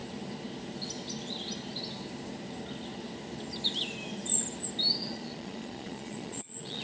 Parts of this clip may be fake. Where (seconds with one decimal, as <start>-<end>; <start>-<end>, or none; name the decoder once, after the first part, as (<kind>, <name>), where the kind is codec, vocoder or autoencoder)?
5.0-6.8 (vocoder, Vocos)

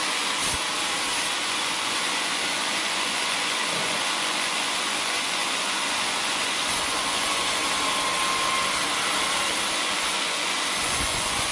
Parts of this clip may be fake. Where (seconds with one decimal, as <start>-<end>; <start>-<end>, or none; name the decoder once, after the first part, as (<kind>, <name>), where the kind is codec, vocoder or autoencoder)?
0.0-0.4 (vocoder, Vocos); 1.3-7.6; 9.7-11.5

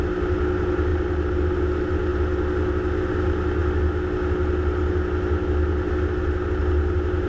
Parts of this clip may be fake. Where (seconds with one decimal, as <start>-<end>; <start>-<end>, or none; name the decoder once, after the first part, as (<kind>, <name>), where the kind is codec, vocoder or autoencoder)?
none

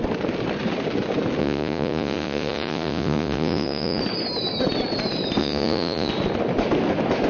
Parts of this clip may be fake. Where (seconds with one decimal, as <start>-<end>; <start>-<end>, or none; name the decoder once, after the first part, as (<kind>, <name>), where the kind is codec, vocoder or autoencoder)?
1.4-4.0 (vocoder, Vocos); 5.4-6.1